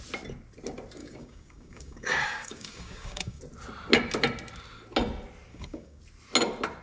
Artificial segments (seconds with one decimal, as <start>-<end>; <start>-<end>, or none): 1.0-3.4; 5.5-6.0